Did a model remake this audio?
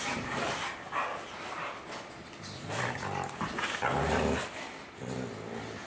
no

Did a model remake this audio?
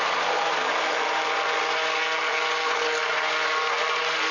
no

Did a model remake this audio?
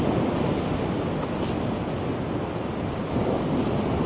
no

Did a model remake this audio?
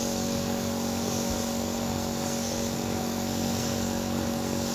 yes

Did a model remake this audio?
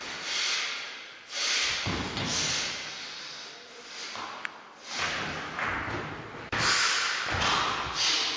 no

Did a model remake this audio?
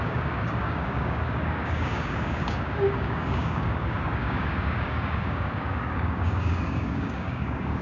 yes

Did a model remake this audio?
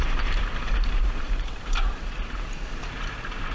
yes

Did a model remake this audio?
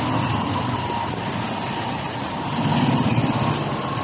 no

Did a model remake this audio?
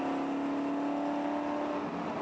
no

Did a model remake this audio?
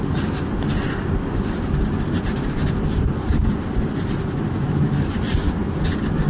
no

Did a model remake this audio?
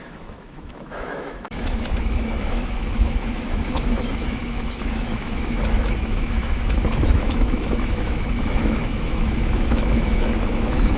yes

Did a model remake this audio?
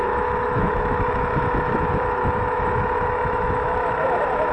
yes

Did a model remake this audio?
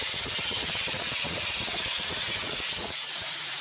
yes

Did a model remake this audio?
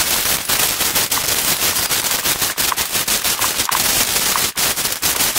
no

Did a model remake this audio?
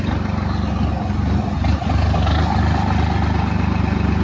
no